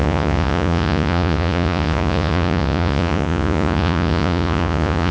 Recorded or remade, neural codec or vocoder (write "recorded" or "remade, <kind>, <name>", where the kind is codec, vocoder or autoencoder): remade, vocoder, Vocos